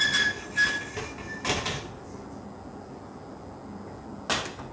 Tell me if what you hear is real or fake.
real